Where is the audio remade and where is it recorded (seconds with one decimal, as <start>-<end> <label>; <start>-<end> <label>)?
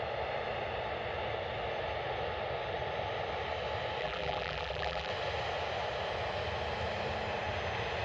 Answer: 0.0-4.0 recorded; 4.0-5.1 remade; 5.1-8.0 recorded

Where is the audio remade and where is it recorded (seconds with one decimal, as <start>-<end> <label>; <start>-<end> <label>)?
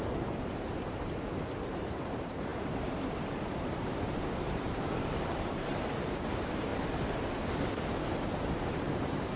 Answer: 0.0-6.7 remade; 6.7-7.8 recorded; 7.8-9.4 remade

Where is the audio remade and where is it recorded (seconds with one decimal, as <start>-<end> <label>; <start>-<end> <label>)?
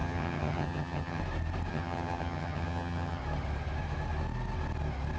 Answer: 0.0-1.2 remade; 1.2-1.7 recorded; 1.7-3.2 remade; 3.2-5.2 recorded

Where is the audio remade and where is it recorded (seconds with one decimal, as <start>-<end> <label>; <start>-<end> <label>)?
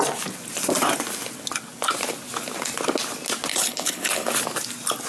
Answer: 0.0-3.5 recorded; 3.5-4.3 remade; 4.3-5.1 recorded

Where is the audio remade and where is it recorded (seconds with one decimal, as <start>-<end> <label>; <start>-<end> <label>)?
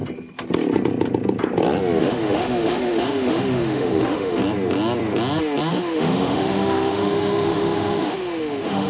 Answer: 0.0-2.0 recorded; 2.0-4.4 remade; 4.4-5.7 recorded; 5.7-8.9 remade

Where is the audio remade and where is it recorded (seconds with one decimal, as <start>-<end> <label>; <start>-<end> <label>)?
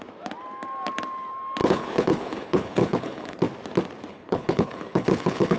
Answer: 0.0-1.6 recorded; 1.6-3.4 remade; 3.4-4.1 recorded; 4.1-5.6 remade